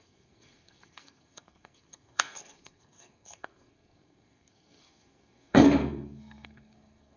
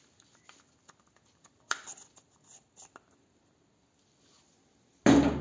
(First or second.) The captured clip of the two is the second